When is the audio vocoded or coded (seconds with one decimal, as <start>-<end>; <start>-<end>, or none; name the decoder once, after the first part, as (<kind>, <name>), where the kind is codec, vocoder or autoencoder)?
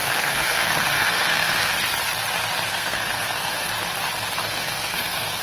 0.0-1.7 (codec, SNAC); 2.7-3.7; 4.4-5.4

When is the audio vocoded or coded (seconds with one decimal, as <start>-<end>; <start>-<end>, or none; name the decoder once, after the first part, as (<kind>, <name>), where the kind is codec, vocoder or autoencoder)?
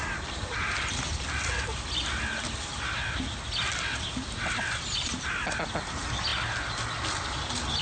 none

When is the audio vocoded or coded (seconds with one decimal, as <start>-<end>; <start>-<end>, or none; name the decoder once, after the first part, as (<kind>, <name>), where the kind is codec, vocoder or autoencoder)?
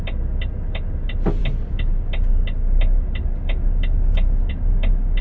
none